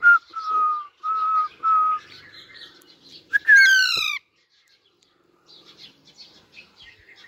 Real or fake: fake